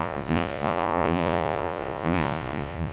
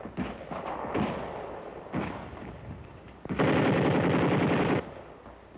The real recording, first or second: second